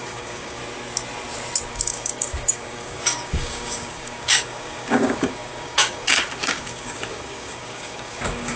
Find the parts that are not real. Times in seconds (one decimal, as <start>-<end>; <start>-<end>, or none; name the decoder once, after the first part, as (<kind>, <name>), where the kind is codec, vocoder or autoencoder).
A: 0.0-0.6 (codec, DAC); 1.7-8.6